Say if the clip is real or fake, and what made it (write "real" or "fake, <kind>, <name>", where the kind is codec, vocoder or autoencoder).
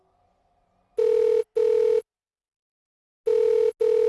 real